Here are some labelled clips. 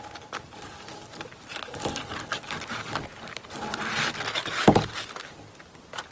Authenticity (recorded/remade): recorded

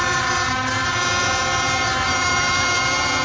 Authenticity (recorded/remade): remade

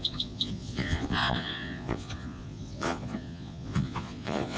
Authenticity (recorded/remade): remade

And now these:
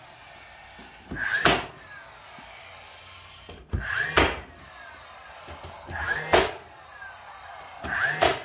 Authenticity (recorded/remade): recorded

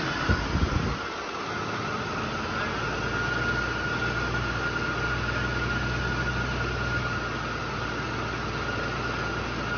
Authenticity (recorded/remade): recorded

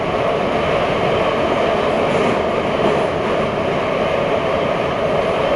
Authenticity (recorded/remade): recorded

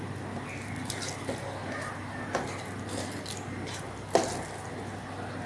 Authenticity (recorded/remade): recorded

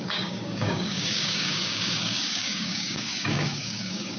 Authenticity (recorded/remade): remade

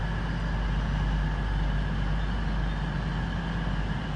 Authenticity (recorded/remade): recorded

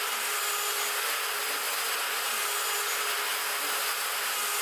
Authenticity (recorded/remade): recorded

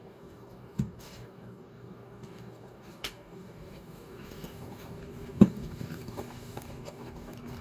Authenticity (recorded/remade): remade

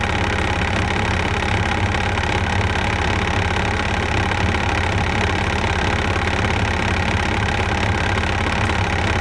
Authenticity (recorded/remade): recorded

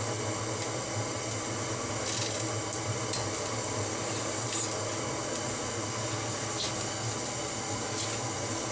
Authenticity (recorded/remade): recorded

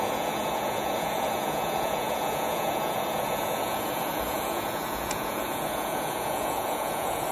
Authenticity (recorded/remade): remade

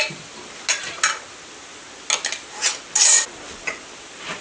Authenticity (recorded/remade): recorded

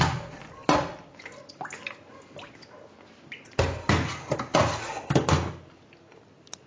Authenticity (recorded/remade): recorded